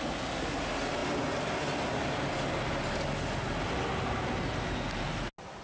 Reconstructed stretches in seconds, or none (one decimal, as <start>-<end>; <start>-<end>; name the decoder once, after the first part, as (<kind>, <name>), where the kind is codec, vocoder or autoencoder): none